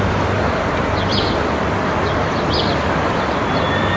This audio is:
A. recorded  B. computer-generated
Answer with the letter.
A